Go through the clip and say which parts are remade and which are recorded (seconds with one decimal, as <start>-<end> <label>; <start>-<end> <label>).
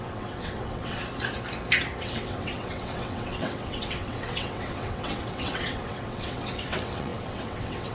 0.0-1.0 remade; 1.0-2.0 recorded; 2.0-7.9 remade